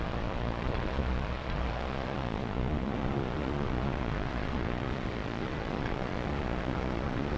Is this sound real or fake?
fake